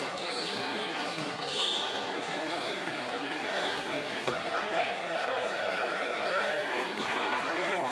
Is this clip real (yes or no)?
no